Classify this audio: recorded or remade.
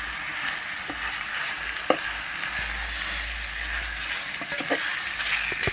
recorded